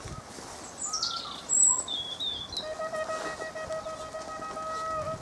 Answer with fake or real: real